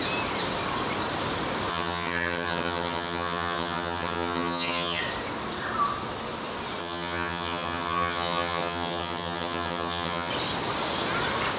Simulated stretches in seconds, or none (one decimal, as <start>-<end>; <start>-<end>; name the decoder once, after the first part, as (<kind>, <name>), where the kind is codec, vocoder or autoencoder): 1.7-5.0 (vocoder, HiFi-GAN); 6.8-10.3